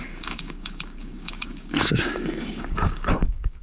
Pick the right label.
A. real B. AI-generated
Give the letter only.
B